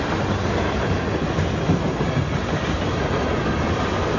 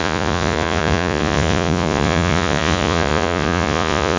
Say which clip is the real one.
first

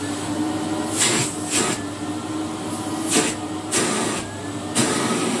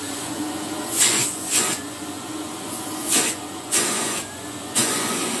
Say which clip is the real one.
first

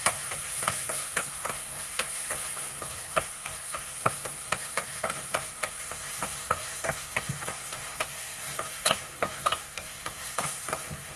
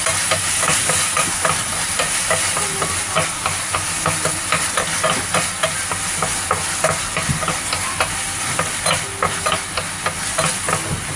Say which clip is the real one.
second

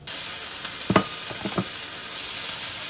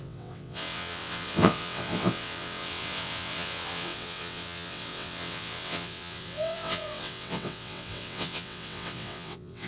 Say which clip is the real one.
first